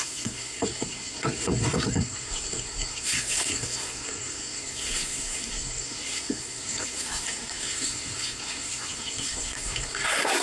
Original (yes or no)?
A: no